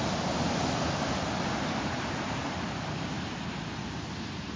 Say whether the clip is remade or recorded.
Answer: recorded